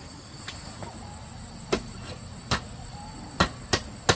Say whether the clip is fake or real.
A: real